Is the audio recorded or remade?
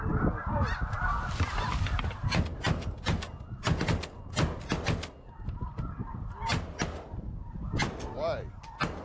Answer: recorded